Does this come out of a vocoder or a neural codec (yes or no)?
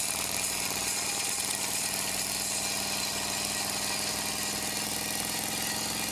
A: no